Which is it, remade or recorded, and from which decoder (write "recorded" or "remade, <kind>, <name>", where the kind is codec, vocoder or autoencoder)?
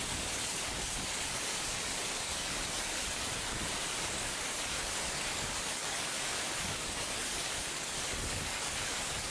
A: remade, codec, DAC